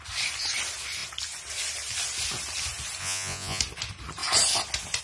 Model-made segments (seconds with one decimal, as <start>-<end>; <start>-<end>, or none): 3.0-3.6